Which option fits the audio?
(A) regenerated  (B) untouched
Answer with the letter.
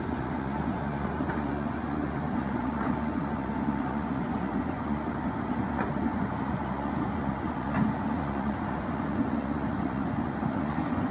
A